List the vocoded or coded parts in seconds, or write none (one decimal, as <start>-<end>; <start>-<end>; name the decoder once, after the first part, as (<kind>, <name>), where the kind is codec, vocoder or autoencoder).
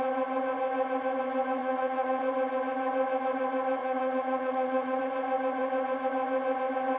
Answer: 1.6-2.2 (vocoder, Vocos); 3.8-5.0